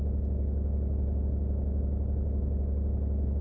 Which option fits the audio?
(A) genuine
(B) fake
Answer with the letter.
A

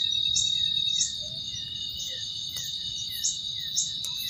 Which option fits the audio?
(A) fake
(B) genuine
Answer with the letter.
A